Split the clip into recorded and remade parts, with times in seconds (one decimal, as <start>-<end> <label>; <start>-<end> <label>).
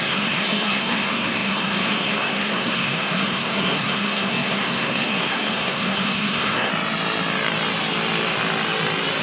0.0-6.7 remade; 6.7-9.2 recorded